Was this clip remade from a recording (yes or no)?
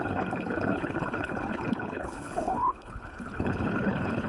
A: yes